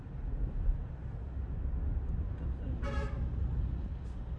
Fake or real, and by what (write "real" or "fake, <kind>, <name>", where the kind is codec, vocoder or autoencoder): real